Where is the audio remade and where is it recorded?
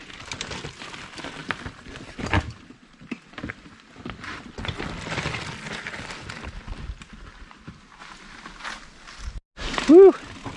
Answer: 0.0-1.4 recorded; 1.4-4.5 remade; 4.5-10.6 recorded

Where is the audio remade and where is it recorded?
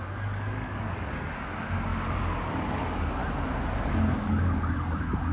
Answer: 0.0-1.9 remade; 1.9-2.5 recorded; 2.5-3.2 remade; 3.2-3.9 recorded; 3.9-5.3 remade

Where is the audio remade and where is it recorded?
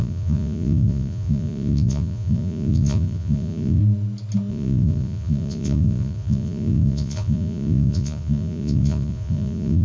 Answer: 0.0-3.8 remade; 3.8-4.5 recorded; 4.5-9.8 remade